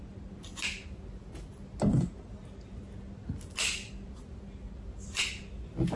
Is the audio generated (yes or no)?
no